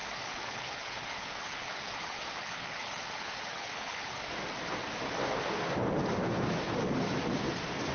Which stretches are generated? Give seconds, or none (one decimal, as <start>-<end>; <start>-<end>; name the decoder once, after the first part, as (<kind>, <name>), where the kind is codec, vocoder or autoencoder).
0.0-4.2 (codec, HILCodec)